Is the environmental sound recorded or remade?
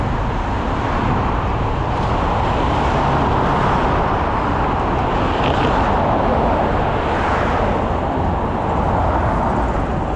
recorded